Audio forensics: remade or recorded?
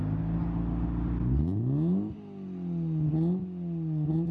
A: recorded